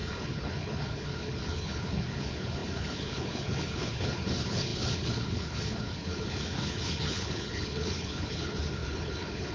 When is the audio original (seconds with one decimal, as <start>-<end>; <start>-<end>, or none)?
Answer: none